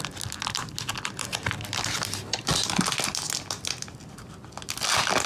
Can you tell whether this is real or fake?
real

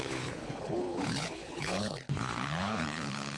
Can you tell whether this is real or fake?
fake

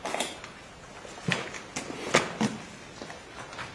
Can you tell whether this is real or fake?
real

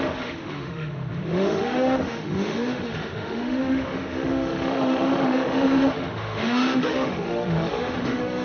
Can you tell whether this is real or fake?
fake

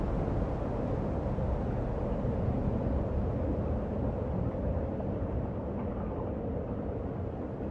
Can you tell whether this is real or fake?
real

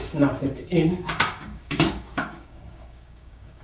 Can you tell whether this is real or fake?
fake